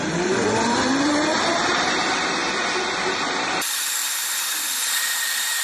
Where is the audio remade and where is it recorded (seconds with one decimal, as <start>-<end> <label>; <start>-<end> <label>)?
0.0-2.4 remade; 2.4-3.0 recorded; 3.0-5.6 remade